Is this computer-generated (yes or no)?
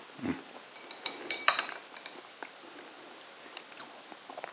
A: no